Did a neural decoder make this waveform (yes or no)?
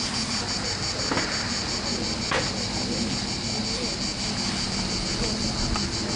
no